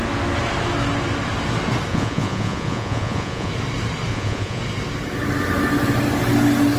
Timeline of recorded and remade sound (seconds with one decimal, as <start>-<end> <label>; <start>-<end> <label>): 0.0-1.9 recorded; 1.9-3.5 remade; 3.5-4.1 recorded; 4.1-4.6 remade; 4.6-6.8 recorded